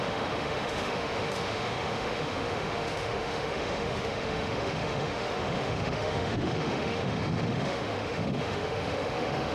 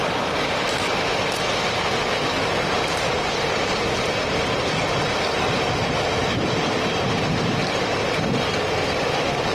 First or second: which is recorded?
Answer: second